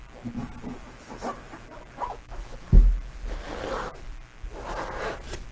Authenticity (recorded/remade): recorded